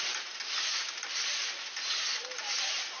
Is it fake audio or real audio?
real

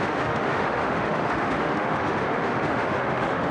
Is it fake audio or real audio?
fake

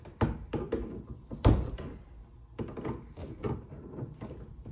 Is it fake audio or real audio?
real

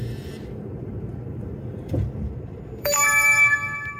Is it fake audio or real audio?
fake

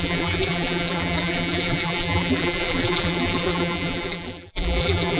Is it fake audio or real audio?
fake